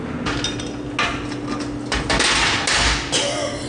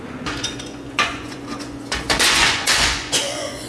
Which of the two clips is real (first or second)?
first